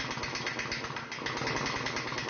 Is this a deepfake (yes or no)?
no